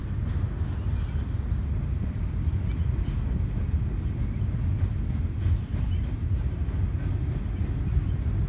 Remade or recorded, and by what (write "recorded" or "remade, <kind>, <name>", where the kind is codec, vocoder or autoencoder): recorded